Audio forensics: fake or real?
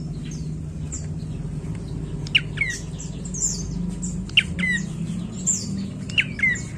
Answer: real